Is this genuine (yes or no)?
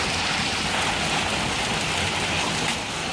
yes